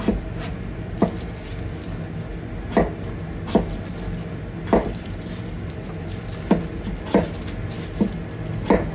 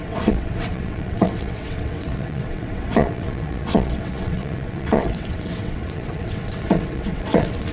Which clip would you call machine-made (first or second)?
second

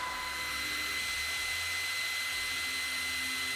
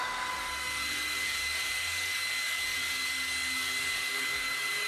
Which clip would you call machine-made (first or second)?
second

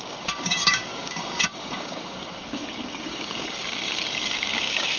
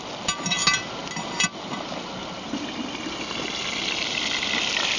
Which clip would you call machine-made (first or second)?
first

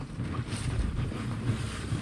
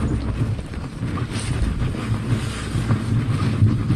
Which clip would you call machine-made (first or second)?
first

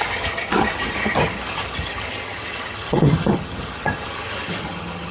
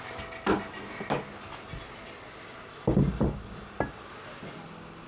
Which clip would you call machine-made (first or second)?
first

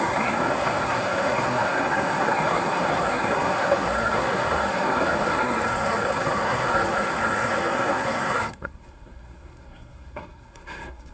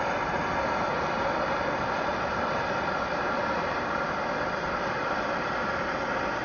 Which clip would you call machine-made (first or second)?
first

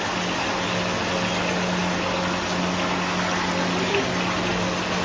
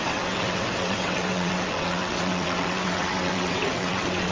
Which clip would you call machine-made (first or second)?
second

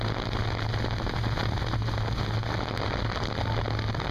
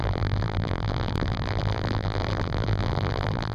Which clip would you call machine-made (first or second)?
second